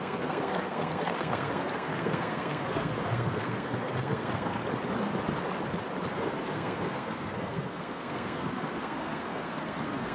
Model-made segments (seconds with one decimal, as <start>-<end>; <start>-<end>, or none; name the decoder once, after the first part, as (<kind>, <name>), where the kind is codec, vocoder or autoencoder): 0.0-4.6 (codec, SNAC); 6.1-10.1